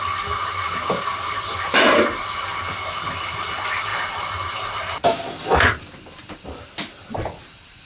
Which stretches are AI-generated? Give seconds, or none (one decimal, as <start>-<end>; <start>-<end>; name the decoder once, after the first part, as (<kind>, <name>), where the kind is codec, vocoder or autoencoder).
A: none